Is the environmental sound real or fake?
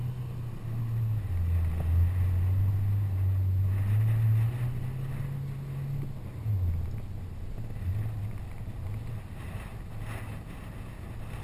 real